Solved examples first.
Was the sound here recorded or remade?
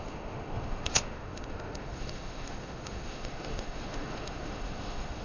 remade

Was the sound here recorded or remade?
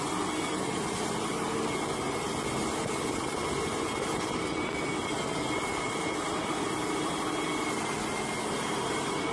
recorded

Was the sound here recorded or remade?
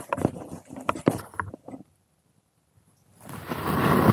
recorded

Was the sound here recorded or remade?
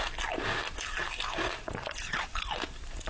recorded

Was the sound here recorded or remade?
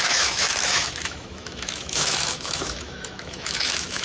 remade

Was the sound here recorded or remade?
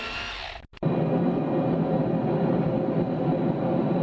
recorded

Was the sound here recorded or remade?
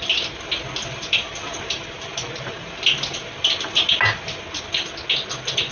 recorded